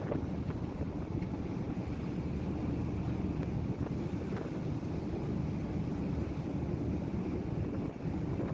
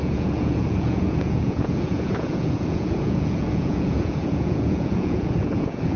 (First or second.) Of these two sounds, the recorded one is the first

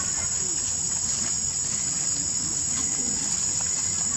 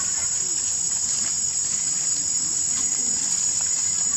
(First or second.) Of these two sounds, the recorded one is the first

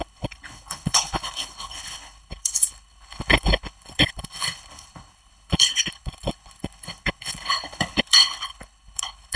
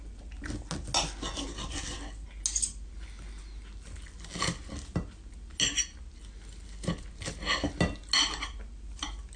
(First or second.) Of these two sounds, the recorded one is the second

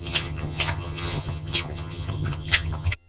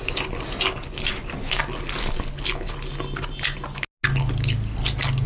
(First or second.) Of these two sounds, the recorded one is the second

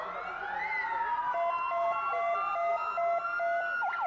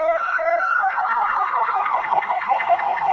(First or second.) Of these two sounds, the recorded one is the first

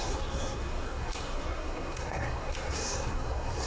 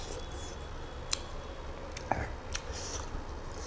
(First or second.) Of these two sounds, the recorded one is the second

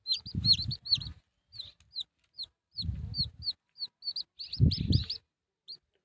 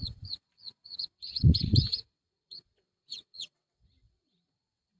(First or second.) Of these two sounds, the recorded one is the first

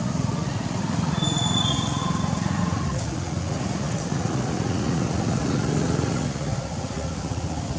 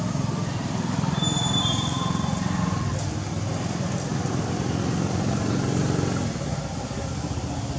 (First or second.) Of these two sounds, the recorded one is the second